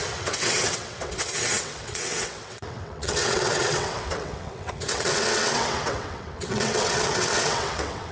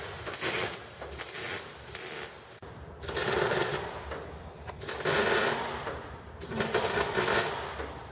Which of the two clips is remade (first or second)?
first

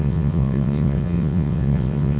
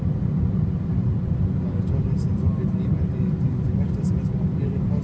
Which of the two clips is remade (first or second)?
first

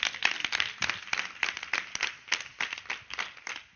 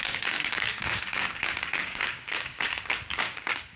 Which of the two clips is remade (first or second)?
second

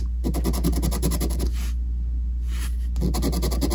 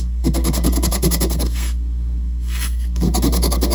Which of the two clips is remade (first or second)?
second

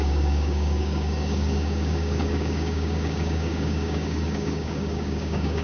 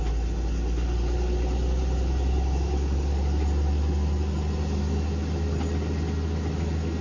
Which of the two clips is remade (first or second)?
first